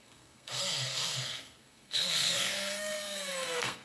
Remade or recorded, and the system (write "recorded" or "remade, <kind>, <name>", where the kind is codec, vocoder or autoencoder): remade, codec, SNAC